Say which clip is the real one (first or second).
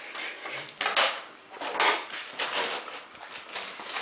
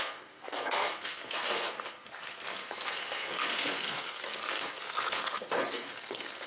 first